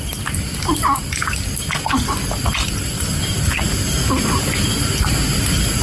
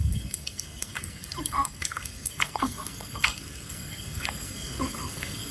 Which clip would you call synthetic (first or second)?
second